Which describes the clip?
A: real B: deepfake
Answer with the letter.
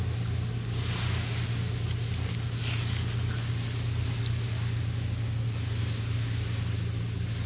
A